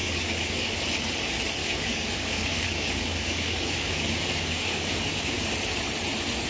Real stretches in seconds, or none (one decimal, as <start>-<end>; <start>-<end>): 0.7-1.6; 5.5-6.5